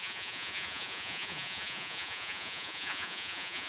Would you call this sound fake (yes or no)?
yes